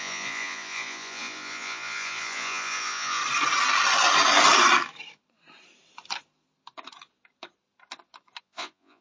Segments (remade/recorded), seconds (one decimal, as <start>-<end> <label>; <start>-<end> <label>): 0.0-3.2 remade; 3.2-8.4 recorded; 8.4-9.0 remade